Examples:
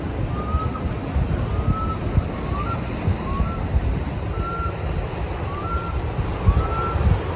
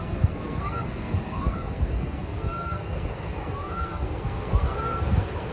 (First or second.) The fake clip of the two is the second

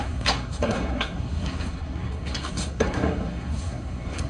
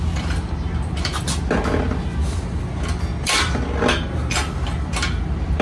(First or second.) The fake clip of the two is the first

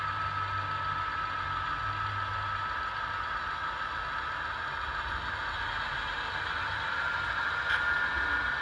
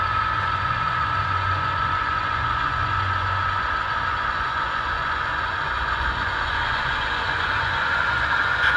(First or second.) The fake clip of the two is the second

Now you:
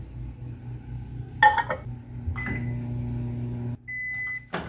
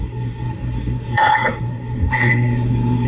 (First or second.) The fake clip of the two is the second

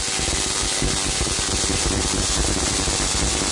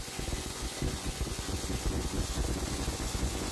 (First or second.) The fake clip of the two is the second